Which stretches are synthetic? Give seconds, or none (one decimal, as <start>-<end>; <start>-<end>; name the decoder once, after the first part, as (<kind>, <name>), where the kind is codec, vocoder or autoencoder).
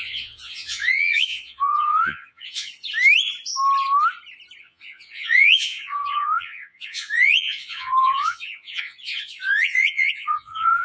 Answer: 0.0-2.7 (vocoder, Vocos); 4.6-10.8